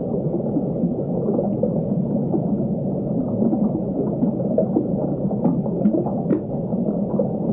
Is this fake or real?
real